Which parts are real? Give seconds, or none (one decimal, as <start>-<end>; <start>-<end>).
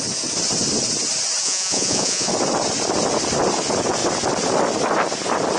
0.0-1.4; 2.3-5.6